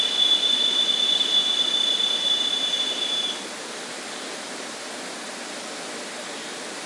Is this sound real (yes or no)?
yes